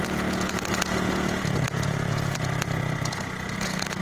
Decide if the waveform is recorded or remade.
remade